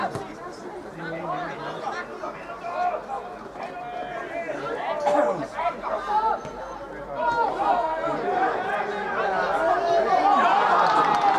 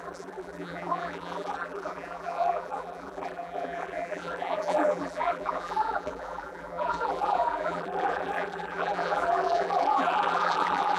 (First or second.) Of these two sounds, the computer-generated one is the second